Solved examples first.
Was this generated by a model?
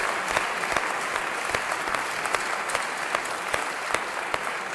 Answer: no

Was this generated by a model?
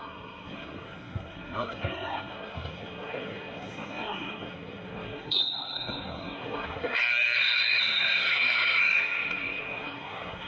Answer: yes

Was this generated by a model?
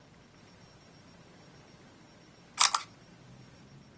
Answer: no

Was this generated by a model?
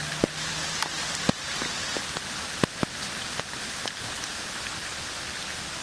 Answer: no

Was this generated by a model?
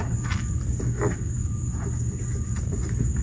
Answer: no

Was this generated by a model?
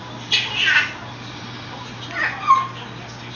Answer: no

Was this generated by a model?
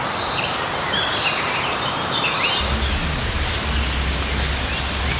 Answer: no